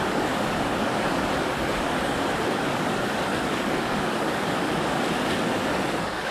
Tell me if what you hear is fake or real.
fake